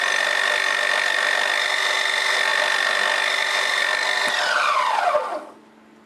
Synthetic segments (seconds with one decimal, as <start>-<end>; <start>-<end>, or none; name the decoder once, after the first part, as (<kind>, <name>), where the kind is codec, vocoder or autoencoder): none